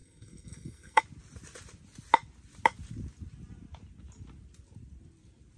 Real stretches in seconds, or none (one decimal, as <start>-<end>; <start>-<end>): 1.0-5.6